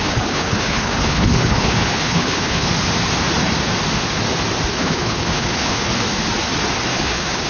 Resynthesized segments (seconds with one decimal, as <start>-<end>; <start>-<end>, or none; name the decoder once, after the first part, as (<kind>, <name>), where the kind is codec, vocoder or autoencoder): 0.0-2.7 (codec, HILCodec); 4.7-5.9; 6.9-7.5